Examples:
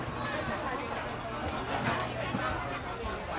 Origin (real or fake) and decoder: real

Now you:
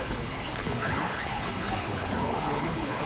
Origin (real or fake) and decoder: fake, codec, HILCodec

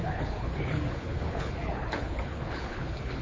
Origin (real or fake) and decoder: fake, codec, HILCodec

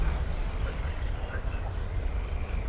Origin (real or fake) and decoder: real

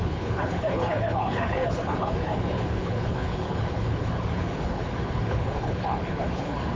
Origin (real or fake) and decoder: fake, codec, HILCodec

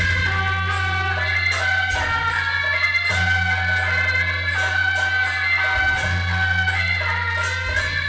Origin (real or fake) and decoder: real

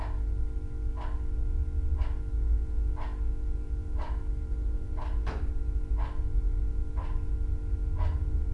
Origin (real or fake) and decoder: real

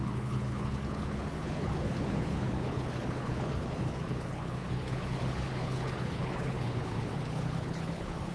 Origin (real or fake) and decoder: fake, codec, HILCodec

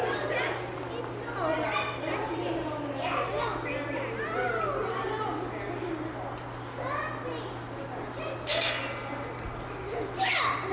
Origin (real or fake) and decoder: real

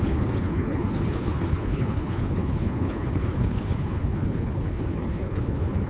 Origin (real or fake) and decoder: fake, codec, HILCodec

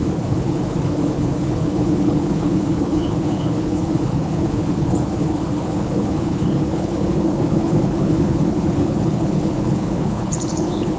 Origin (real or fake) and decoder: fake, codec, HILCodec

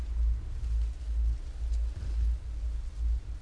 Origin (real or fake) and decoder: real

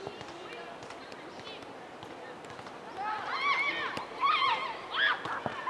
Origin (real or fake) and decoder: real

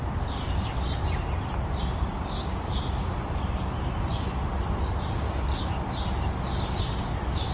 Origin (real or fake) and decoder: real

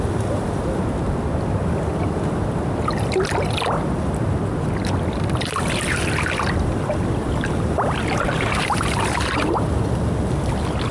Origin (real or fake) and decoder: real